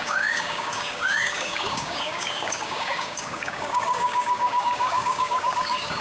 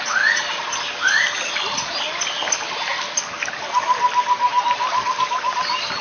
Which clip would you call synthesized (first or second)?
first